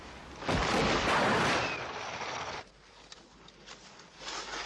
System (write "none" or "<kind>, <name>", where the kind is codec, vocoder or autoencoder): none